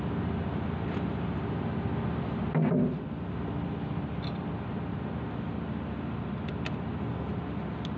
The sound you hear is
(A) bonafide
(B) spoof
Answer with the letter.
A